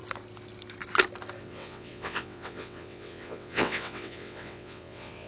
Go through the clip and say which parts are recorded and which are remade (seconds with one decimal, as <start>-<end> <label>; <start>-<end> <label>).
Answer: 0.0-1.4 recorded; 1.4-5.3 remade